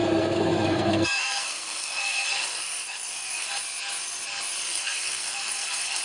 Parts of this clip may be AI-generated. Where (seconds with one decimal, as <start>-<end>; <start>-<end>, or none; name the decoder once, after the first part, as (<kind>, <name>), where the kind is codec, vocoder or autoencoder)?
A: 0.0-3.6 (codec, SNAC); 4.7-6.0